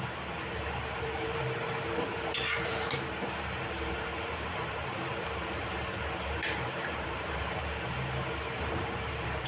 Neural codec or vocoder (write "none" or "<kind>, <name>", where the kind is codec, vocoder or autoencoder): vocoder, BigVGAN v2